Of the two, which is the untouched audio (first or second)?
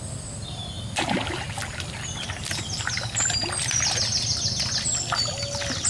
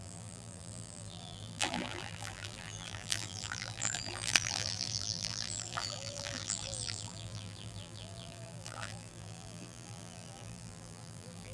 first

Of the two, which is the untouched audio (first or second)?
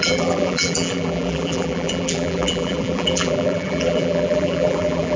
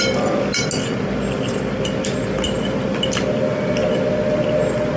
second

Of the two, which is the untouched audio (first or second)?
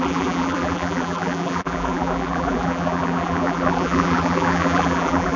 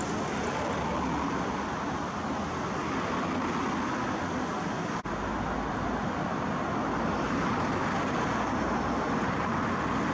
second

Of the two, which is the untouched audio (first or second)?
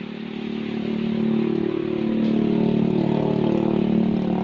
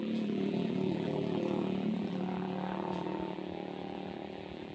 first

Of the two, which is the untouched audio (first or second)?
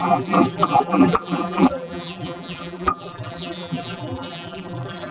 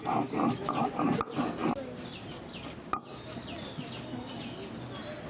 second